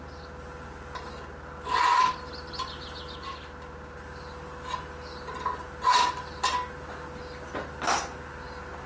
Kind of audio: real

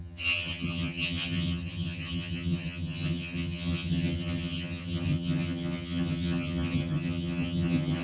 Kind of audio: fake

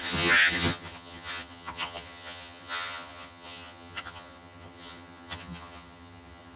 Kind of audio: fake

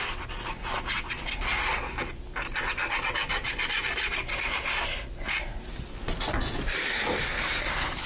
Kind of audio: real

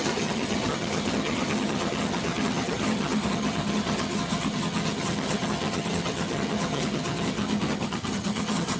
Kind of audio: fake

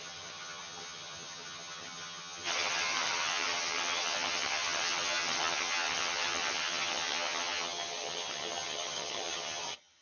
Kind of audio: fake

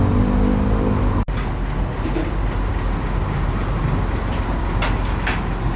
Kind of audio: real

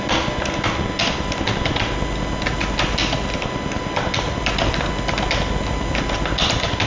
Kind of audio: real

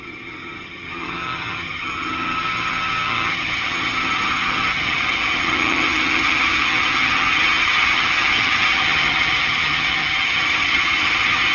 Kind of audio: fake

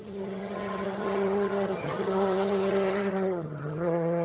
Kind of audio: fake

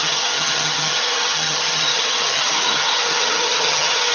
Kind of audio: fake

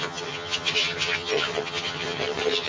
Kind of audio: fake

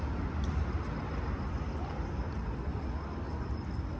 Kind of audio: real